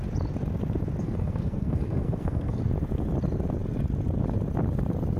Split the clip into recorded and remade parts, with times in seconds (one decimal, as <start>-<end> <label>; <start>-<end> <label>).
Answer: 0.0-1.0 recorded; 1.0-2.6 remade; 2.6-5.2 recorded